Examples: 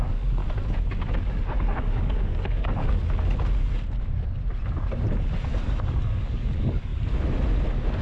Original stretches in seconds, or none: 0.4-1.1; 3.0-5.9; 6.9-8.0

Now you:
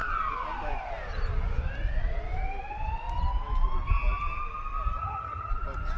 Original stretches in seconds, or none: 0.0-5.0; 5.5-6.0

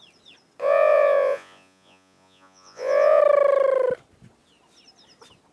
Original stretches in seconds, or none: 0.0-0.6; 3.2-5.5

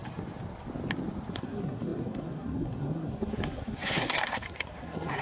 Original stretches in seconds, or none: 0.0-1.3

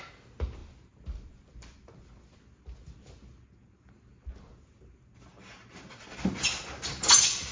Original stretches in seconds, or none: 0.0-7.5

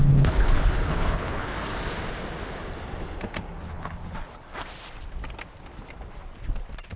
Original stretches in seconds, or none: 1.5-3.6; 4.5-7.0

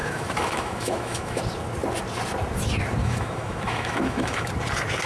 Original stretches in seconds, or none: 1.4-3.0; 4.5-5.1